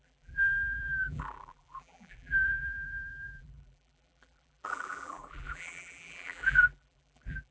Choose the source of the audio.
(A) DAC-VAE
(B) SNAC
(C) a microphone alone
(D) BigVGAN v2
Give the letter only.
D